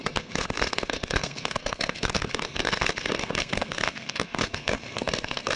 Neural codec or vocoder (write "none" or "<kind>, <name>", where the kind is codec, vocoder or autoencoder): codec, SNAC